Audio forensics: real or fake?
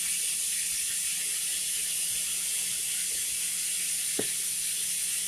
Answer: real